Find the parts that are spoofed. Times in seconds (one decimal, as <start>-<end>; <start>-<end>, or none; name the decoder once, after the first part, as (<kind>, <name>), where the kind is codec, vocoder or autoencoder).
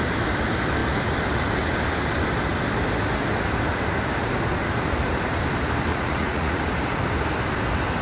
5.9-6.6 (vocoder, Vocos)